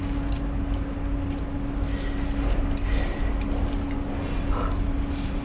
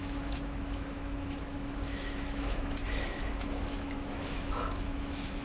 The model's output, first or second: second